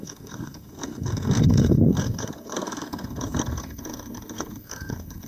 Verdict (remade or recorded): remade